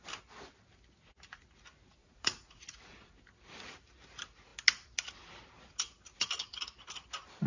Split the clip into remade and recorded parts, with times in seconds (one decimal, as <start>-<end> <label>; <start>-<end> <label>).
0.0-2.0 recorded; 2.0-3.1 remade; 3.1-7.5 recorded